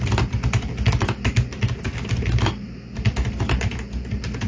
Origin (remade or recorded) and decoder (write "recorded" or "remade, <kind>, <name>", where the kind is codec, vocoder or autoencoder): recorded